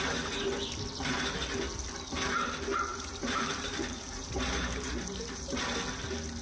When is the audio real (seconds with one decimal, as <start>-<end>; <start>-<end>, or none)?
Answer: 0.0-2.9; 5.6-6.4